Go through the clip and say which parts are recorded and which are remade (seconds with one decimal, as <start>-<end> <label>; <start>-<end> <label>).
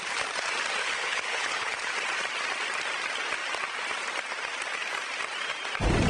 0.0-0.8 recorded; 0.8-1.9 remade; 1.9-6.1 recorded